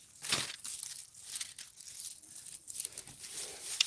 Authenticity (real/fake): real